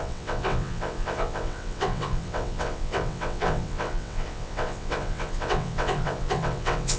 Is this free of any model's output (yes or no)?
no